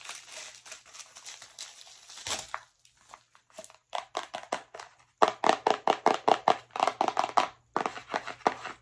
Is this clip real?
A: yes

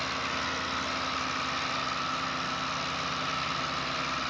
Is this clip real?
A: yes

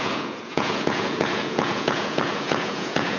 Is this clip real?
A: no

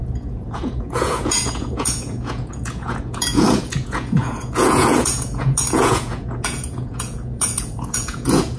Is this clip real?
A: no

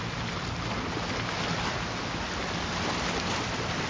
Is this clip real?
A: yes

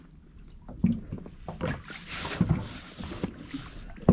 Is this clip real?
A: yes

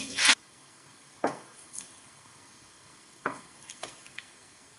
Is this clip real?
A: no